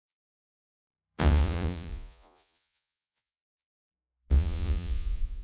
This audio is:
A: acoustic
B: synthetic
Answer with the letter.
B